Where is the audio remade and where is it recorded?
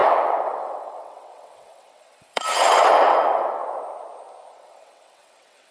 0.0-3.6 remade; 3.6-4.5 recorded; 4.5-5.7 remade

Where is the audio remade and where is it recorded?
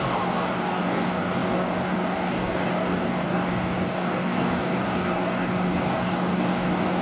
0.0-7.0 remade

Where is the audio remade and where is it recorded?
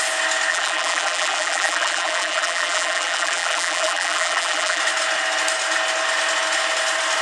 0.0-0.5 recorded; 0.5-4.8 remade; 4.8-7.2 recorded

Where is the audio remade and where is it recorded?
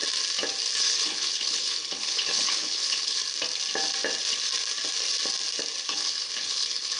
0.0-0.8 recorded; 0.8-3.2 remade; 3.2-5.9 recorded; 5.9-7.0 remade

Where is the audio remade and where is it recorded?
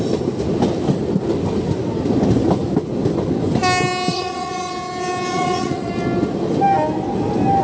0.0-4.1 recorded; 4.1-4.7 remade; 4.7-5.3 recorded; 5.3-5.9 remade; 5.9-7.6 recorded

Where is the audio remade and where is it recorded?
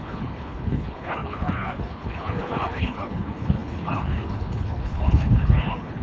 0.0-6.0 remade